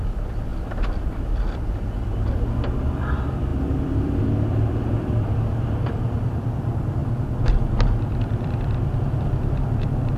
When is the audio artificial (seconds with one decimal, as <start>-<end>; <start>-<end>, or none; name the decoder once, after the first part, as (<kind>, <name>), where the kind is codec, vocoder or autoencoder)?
0.0-0.5 (vocoder, BigVGAN v2); 1.3-7.0; 8.2-10.2